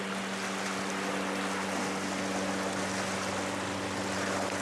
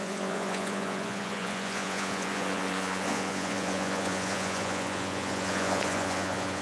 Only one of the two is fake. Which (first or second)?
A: second